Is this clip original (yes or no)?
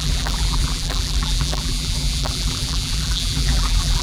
no